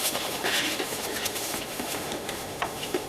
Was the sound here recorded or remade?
remade